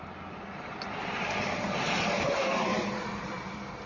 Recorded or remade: recorded